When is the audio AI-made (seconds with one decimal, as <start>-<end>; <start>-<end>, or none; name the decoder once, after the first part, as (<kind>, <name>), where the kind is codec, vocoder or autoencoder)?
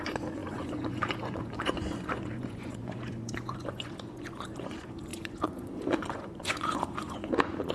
0.0-7.7 (vocoder, Vocos)